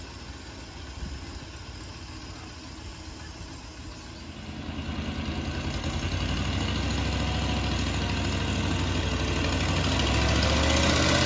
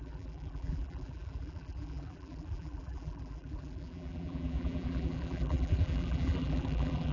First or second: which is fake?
second